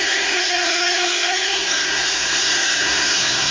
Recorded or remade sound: remade